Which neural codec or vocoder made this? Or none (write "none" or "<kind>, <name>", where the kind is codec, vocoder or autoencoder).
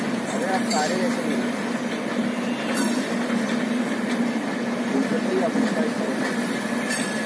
vocoder, BigVGAN v2